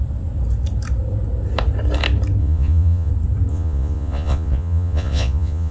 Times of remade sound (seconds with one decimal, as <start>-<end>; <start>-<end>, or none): 2.4-3.1; 3.5-5.7

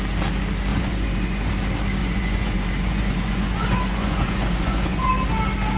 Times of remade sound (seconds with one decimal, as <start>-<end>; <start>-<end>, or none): 0.7-1.5; 2.0-5.1